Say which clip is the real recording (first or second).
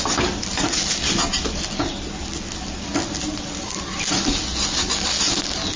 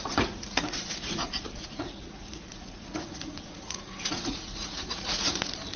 first